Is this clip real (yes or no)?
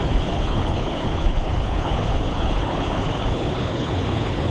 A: no